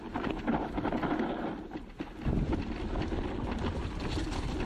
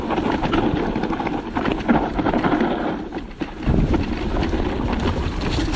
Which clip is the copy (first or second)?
second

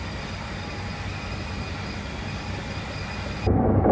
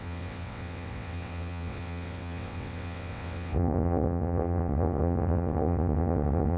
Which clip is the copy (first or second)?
second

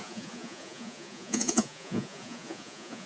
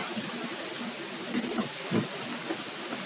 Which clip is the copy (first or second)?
first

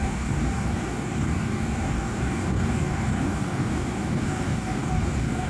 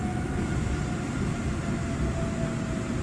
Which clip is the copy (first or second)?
first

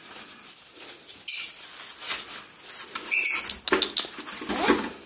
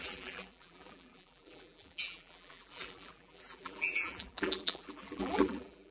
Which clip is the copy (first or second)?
second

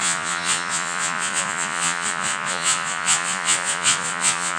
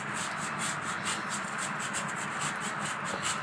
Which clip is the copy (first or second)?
first